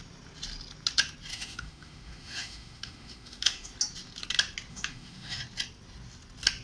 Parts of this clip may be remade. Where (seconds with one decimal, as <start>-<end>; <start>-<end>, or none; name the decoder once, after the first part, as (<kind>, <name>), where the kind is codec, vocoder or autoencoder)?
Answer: 1.3-3.7 (autoencoder, DAC-VAE); 4.7-5.4